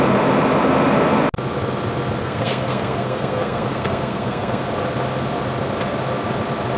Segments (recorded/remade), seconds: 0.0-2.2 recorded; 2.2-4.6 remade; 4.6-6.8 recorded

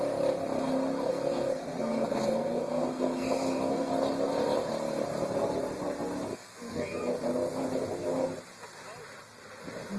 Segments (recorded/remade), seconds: 0.0-1.1 recorded; 1.1-3.9 remade; 3.9-6.3 recorded; 6.3-7.2 remade; 7.2-10.0 recorded

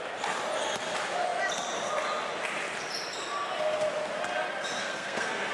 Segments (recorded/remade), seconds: 0.0-4.8 recorded; 4.8-5.5 remade

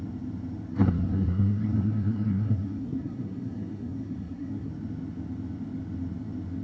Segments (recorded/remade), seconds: 0.0-0.7 recorded; 0.7-4.7 remade; 4.7-6.6 recorded

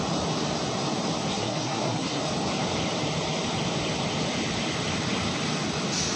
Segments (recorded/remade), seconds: 0.0-1.3 recorded; 1.3-2.2 remade; 2.2-6.2 recorded